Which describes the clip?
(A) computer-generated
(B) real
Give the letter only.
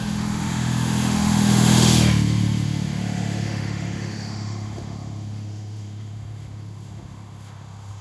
A